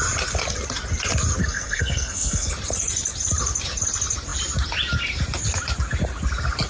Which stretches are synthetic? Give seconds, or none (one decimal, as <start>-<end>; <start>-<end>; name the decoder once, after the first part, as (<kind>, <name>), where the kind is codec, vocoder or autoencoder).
1.4-2.5 (codec, SNAC)